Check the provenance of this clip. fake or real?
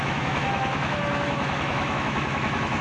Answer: fake